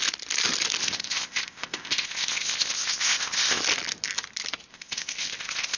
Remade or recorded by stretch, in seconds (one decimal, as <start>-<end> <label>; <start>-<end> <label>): 0.0-0.8 recorded; 0.8-3.6 remade; 3.6-4.7 recorded; 4.7-5.8 remade